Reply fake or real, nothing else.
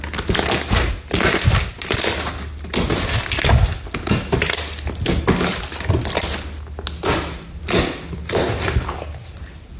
real